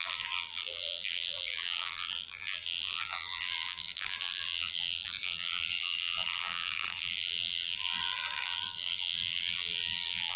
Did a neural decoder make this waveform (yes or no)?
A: yes